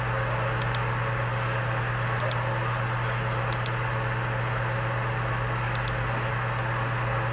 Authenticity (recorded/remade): recorded